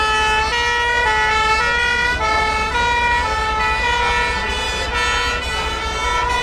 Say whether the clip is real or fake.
real